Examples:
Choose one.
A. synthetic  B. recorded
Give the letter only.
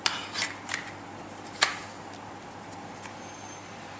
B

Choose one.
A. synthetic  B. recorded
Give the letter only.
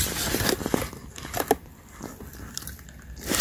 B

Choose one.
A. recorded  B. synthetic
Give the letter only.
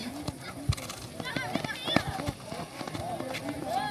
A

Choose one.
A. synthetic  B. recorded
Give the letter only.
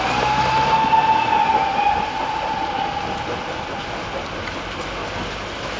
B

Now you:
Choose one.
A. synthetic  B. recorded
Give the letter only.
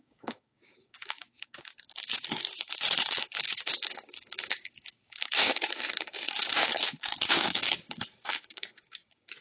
A